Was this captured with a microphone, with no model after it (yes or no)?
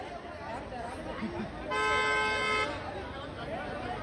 yes